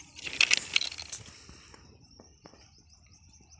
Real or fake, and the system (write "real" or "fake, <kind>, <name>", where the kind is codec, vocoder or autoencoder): fake, vocoder, BigVGAN v2